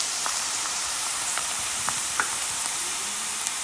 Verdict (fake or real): fake